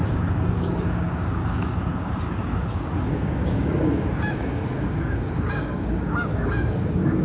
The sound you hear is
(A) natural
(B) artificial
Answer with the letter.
B